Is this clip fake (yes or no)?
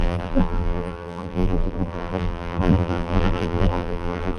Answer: yes